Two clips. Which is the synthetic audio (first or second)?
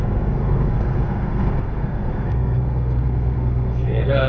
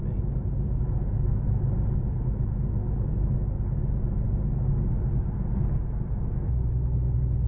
first